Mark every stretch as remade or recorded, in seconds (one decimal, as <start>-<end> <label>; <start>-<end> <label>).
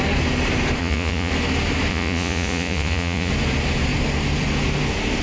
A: 0.0-0.8 recorded; 0.8-1.3 remade; 1.3-1.9 recorded; 1.9-3.3 remade; 3.3-5.2 recorded